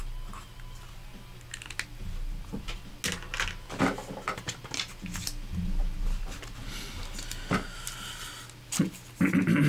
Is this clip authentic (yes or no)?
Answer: yes